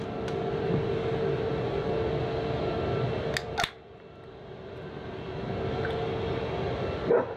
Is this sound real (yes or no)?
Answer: yes